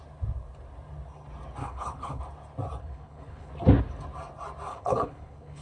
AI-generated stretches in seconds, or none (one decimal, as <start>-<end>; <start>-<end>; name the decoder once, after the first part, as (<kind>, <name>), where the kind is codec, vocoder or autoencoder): 1.6-2.2 (codec, HILCodec); 2.8-3.5; 4.7-5.6